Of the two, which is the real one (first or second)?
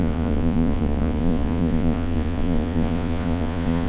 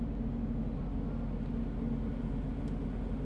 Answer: second